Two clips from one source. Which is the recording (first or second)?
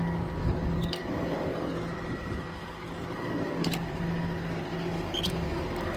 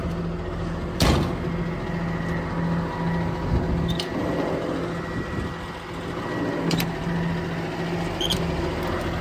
second